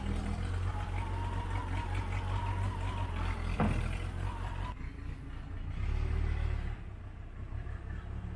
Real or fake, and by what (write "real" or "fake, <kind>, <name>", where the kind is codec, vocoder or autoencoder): real